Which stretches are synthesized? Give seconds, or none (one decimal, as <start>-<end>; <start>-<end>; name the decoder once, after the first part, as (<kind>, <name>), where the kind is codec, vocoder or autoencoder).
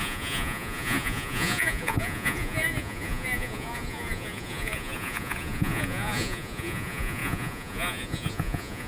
0.0-8.9 (vocoder, Vocos)